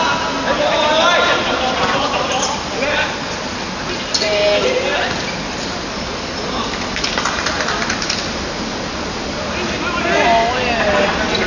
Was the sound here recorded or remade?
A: recorded